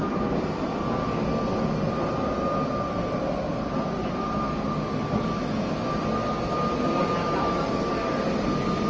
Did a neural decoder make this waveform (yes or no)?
no